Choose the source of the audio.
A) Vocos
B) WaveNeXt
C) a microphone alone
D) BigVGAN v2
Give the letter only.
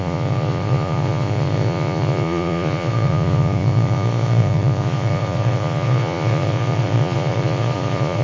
A